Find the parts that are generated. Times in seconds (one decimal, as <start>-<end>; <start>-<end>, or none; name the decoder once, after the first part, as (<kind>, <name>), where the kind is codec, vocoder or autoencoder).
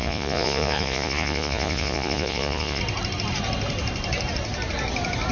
0.0-2.8 (vocoder, Vocos)